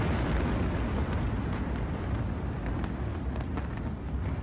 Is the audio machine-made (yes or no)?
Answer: no